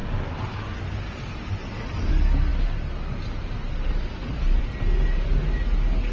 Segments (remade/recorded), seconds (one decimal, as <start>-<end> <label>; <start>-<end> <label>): 0.0-6.1 recorded

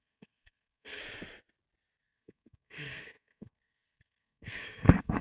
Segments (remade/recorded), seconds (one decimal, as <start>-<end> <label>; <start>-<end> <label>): 0.0-1.0 remade; 1.0-2.0 recorded; 2.0-5.2 remade

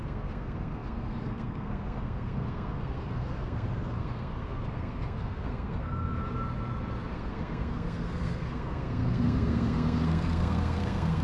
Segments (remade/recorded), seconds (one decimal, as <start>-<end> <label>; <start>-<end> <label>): 0.0-6.3 remade; 6.3-7.1 recorded; 7.1-11.2 remade

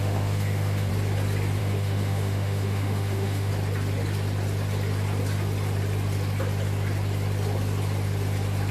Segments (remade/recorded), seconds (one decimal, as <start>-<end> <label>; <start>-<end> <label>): 0.0-0.9 remade; 0.9-1.6 recorded; 1.6-3.5 remade; 3.5-8.7 recorded

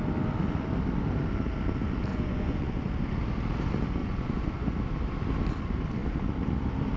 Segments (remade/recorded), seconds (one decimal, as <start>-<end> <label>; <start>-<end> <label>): 0.0-2.1 recorded; 2.1-2.9 remade; 2.9-4.0 recorded; 4.0-4.7 remade; 4.7-7.0 recorded